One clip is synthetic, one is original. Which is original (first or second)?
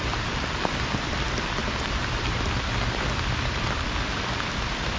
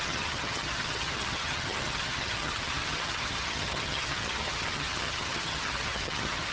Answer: first